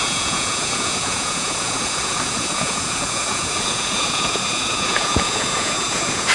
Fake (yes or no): yes